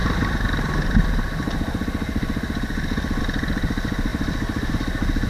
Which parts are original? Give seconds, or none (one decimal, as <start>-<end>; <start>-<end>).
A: 0.0-5.3